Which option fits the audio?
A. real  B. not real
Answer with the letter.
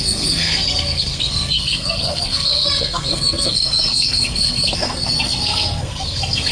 B